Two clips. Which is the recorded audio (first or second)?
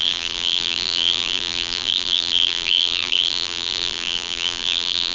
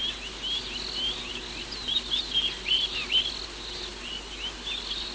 second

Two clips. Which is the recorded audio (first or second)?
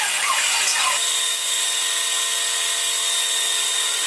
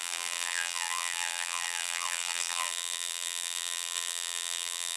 first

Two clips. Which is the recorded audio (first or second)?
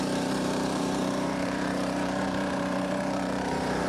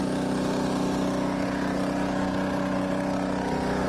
second